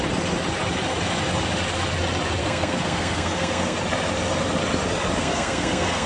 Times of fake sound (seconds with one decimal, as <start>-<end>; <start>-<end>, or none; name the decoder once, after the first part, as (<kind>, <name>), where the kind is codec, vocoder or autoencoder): 2.4-3.8 (codec, SNAC); 5.2-6.1